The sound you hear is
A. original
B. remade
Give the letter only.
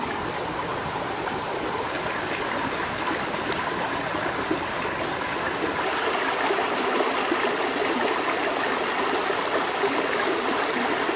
A